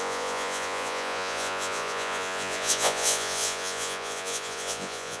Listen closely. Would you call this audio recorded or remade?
remade